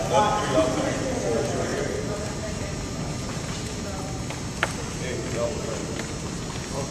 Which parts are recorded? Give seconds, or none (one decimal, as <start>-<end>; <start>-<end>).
0.0-1.7; 4.2-5.8; 6.4-6.9

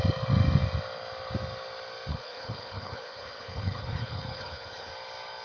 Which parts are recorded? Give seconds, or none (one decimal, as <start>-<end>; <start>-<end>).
0.0-2.1; 4.9-5.4